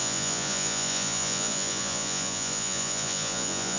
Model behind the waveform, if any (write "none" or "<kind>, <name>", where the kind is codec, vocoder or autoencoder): vocoder, Vocos